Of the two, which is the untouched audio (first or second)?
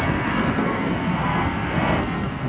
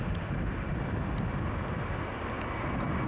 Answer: second